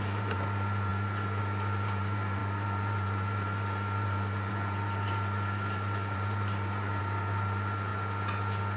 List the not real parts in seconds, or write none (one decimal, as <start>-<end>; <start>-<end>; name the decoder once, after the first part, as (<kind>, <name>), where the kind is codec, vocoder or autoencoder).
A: 0.0-7.9 (vocoder, BigVGAN v2)